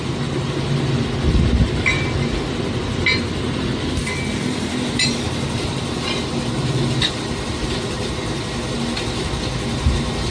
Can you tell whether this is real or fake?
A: fake